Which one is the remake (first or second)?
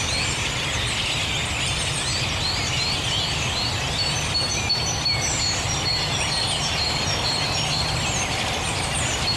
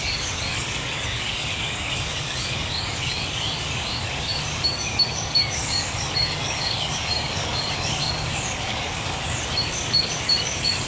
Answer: second